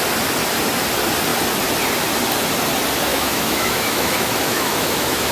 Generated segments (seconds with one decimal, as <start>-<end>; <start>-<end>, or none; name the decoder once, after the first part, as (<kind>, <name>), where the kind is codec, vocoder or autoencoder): 3.1-5.3 (autoencoder, DAC-VAE)

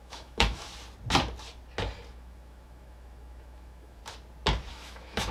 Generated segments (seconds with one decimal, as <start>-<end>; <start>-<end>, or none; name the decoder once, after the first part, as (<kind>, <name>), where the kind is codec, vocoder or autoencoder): 0.0-0.7 (autoencoder, DAC-VAE); 2.1-4.0; 4.7-5.3

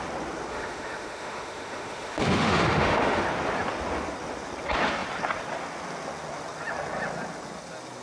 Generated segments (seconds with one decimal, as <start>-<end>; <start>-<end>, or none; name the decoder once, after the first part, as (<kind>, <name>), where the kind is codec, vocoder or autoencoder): 0.5-3.2 (autoencoder, DAC-VAE)

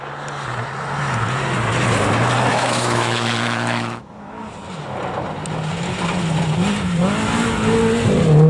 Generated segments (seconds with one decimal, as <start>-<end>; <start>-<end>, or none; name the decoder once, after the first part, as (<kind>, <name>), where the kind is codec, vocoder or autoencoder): 2.5-4.4 (autoencoder, DAC-VAE)

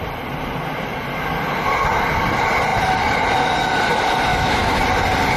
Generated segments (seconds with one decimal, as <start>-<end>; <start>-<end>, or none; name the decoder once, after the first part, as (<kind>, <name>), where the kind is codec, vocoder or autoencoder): 4.3-4.8 (autoencoder, DAC-VAE)

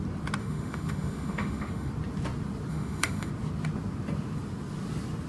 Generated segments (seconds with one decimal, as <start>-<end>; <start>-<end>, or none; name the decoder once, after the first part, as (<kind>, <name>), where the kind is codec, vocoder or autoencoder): 0.4-1.9 (autoencoder, DAC-VAE); 2.7-3.3